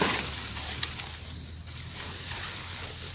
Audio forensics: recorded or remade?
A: remade